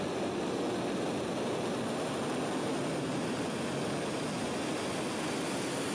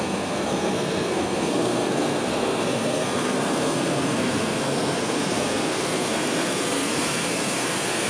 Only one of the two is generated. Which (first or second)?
second